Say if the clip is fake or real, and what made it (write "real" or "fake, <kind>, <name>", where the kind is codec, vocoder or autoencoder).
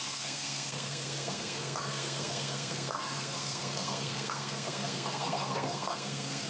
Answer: fake, codec, SNAC